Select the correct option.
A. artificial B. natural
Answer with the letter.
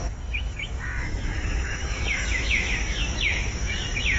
A